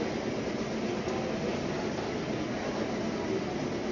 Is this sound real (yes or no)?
yes